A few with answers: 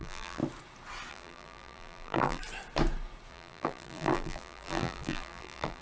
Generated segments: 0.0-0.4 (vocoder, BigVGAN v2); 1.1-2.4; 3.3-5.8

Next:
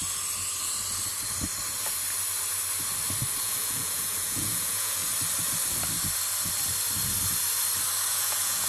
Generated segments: 3.4-5.0 (vocoder, Vocos); 8.1-8.7

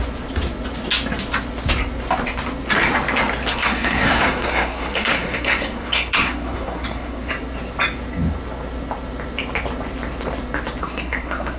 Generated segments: 3.5-7.3 (codec, SNAC); 10.8-11.6